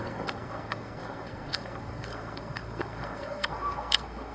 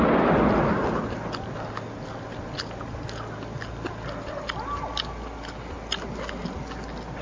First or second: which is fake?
first